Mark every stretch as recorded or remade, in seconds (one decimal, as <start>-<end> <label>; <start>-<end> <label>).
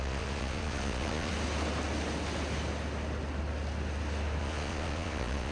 0.0-1.3 remade; 1.3-4.4 recorded; 4.4-5.5 remade